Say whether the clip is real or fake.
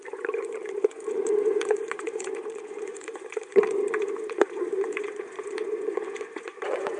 fake